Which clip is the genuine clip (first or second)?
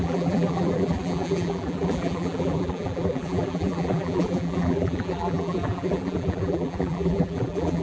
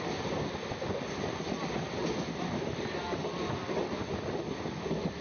second